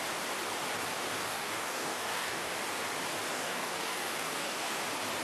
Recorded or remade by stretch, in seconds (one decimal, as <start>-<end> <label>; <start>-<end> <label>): 0.0-1.2 recorded; 1.2-2.5 remade; 2.5-3.3 recorded; 3.3-4.8 remade; 4.8-5.2 recorded